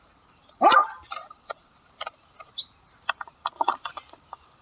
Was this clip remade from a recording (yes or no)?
yes